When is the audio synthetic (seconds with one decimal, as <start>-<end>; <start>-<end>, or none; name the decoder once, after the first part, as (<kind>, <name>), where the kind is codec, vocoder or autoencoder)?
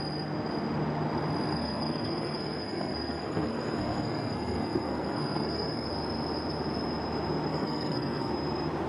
1.5-5.9 (codec, SNAC); 7.5-8.3